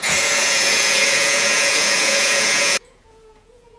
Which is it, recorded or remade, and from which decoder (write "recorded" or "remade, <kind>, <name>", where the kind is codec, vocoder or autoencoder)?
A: remade, vocoder, Vocos